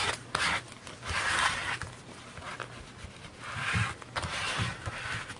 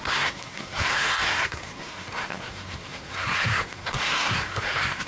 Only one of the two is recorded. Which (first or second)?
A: first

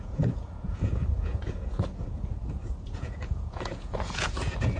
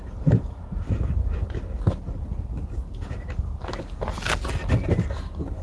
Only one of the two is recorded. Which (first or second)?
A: second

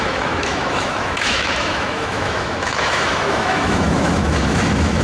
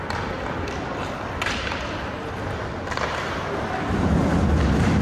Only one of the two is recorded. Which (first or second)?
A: second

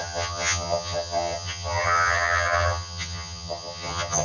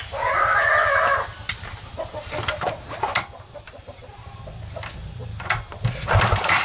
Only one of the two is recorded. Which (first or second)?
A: second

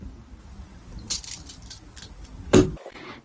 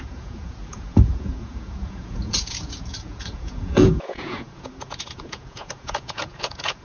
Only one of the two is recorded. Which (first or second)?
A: first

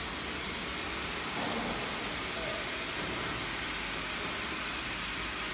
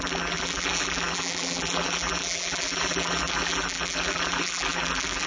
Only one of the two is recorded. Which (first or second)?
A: first